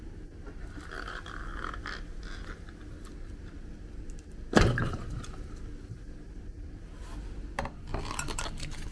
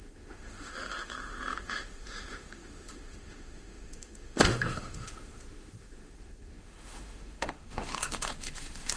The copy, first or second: second